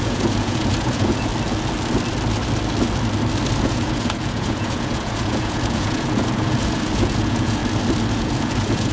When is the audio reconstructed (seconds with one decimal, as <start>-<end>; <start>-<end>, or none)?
0.0-1.3; 3.6-7.6; 8.1-8.9